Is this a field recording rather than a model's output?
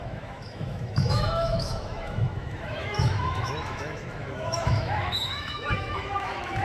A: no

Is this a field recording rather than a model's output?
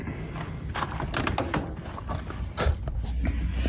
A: yes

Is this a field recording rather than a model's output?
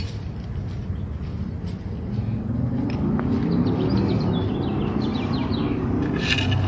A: yes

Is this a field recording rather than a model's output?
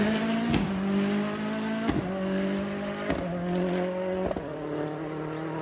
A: yes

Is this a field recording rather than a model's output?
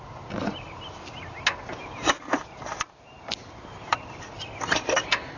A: yes